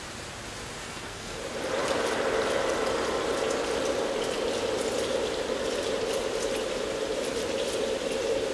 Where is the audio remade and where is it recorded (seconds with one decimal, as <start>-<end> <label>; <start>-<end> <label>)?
0.0-0.8 recorded; 0.8-1.4 remade; 1.4-8.5 recorded